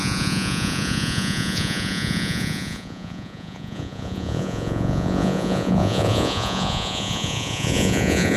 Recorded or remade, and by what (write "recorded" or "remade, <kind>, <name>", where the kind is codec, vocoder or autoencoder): remade, vocoder, Vocos